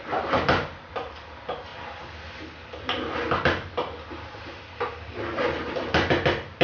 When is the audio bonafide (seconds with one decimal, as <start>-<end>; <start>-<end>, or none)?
0.0-6.6